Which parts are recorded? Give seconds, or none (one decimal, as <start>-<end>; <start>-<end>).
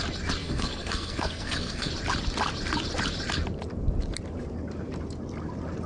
0.0-0.4; 1.9-5.9